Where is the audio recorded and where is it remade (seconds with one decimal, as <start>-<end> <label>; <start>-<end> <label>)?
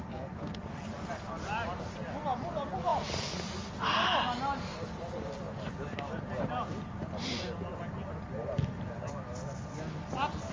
0.0-10.5 recorded